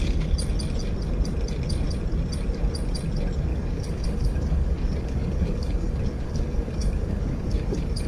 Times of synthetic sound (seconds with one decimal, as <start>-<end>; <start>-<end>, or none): 3.5-8.1